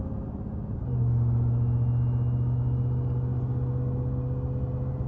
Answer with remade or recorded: recorded